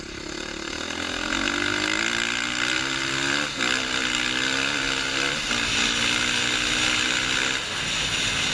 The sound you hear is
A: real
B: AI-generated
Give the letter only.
A